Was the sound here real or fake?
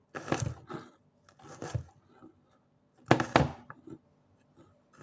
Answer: real